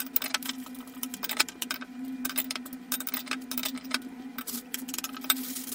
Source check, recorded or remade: recorded